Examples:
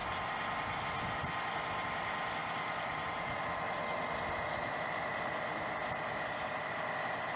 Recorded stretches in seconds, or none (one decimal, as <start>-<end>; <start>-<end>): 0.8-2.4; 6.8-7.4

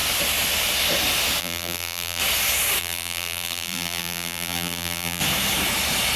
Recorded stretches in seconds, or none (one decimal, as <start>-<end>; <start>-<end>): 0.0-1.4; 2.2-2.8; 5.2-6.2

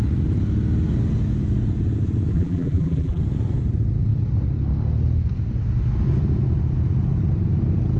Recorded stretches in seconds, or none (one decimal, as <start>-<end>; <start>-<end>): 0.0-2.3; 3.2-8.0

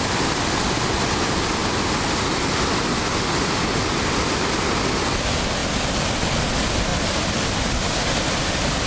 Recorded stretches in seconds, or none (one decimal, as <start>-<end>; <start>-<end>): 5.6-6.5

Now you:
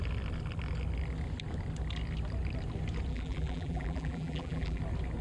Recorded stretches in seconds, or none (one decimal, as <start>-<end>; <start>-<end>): 0.0-3.1; 4.8-5.2

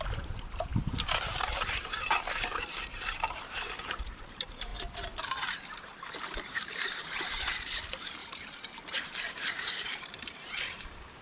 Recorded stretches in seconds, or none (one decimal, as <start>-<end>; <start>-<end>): 4.7-5.2